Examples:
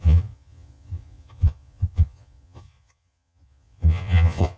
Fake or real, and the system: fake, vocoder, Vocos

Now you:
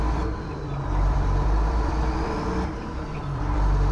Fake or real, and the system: fake, vocoder, BigVGAN v2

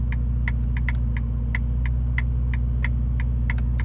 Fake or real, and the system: real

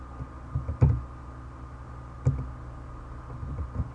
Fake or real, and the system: real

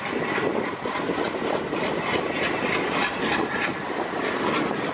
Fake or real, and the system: real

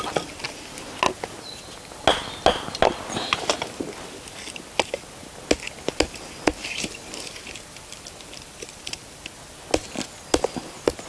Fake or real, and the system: real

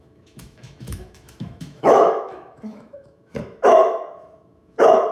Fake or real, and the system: fake, autoencoder, DAC-VAE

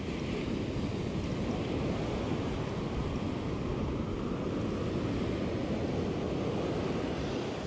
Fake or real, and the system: real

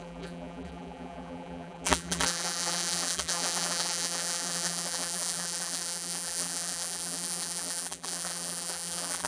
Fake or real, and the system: fake, vocoder, BigVGAN v2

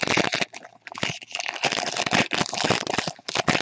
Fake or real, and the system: real